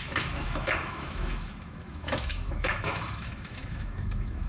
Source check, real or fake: fake